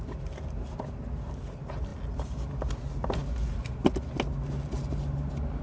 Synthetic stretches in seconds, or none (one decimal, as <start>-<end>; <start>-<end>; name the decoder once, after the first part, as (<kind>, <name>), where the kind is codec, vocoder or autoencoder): none